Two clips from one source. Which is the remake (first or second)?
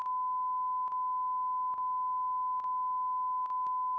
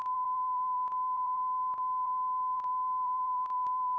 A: second